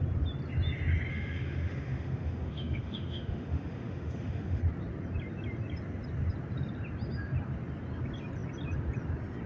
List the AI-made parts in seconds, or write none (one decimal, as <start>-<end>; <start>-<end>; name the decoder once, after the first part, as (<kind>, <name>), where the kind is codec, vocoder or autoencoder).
1.1-4.6 (autoencoder, DAC-VAE)